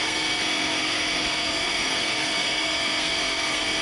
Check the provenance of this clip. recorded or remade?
remade